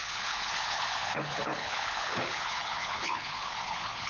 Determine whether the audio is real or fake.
fake